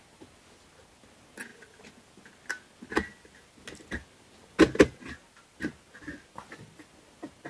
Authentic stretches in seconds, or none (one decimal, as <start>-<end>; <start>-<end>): 0.0-7.5